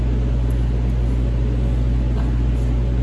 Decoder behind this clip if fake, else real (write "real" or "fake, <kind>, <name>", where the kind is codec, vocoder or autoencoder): real